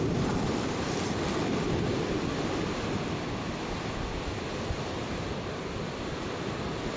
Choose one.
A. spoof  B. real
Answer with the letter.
B